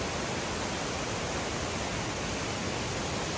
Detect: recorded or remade recorded